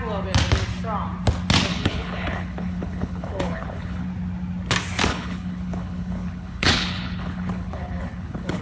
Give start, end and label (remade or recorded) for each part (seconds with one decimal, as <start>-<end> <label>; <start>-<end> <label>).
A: 0.0-1.7 recorded; 1.7-4.1 remade; 4.1-5.1 recorded; 5.1-8.6 remade